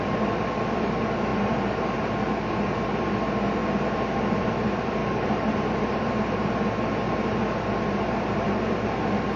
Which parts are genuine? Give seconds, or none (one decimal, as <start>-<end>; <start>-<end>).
0.0-5.0; 6.6-9.4